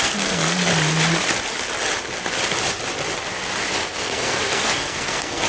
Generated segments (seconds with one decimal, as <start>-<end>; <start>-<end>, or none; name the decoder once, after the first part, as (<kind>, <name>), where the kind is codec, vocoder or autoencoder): 0.0-0.7 (codec, SNAC); 4.0-5.5

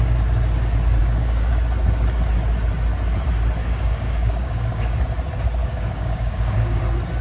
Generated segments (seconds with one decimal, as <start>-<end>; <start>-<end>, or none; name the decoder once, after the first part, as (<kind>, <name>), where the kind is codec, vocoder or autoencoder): 1.0-1.5 (codec, DAC); 3.6-5.0; 5.6-6.8

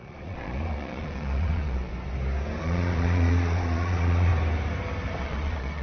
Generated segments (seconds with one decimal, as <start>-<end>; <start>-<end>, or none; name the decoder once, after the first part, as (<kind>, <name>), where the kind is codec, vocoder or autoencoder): 0.0-1.9 (vocoder, Vocos); 2.6-4.3; 5.2-5.8

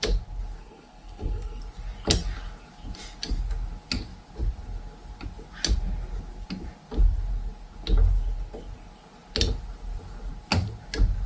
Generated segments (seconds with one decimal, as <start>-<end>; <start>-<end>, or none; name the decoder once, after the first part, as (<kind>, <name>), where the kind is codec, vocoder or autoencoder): 0.6-1.6 (codec, SNAC)

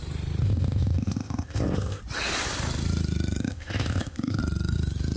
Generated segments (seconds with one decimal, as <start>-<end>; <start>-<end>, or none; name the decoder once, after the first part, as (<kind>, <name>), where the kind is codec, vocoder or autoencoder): 0.4-2.0 (codec, ZipCodec); 3.4-4.4

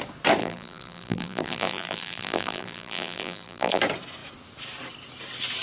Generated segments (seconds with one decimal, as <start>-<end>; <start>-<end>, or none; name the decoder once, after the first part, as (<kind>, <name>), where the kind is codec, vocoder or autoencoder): 0.4-3.8 (vocoder, BigVGAN v2)

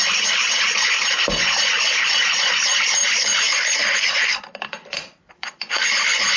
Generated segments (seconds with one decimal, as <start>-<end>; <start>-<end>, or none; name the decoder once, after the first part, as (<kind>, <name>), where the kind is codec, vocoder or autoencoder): 0.0-6.4 (vocoder, BigVGAN v2)

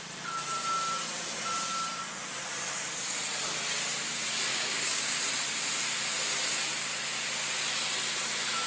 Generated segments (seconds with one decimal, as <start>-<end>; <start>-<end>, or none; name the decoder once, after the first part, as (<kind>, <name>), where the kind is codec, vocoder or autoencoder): 4.5-5.2 (codec, DAC)